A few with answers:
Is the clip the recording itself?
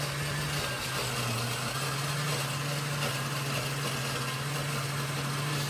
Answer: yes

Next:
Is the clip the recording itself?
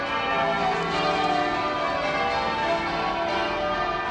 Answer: yes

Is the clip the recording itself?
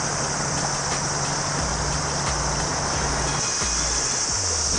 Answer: yes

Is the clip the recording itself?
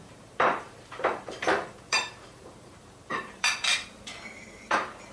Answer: no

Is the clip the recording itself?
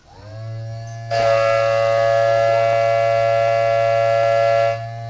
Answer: yes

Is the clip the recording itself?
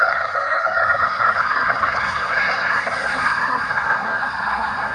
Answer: no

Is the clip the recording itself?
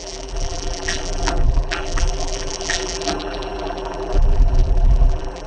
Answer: no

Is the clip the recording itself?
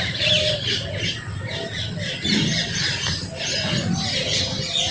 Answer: yes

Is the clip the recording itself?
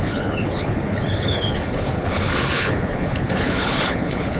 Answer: no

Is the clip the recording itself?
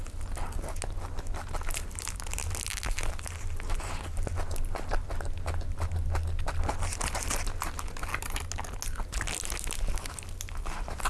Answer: yes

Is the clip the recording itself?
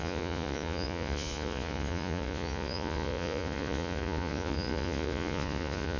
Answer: no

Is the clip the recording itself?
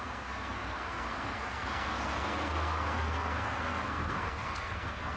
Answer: no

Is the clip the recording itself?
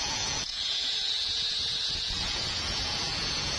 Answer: no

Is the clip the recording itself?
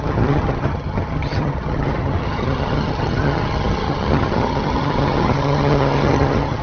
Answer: no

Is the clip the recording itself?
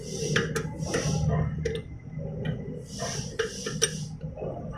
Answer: yes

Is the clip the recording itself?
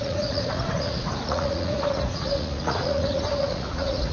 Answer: no